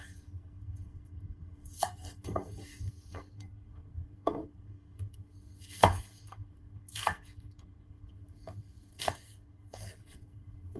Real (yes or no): no